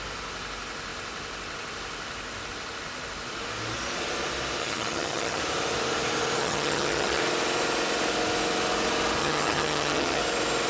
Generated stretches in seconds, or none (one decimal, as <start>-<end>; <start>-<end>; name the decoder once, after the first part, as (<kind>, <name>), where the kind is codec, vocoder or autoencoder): 4.6-5.4 (vocoder, HiFi-GAN); 6.4-7.2; 9.2-10.2